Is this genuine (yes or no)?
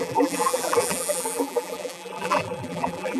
no